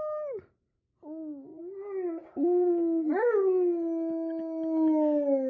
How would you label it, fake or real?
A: real